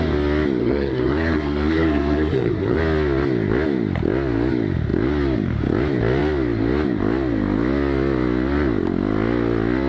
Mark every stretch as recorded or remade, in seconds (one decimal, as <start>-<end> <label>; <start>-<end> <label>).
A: 0.0-0.6 recorded; 0.6-2.8 remade; 2.8-9.9 recorded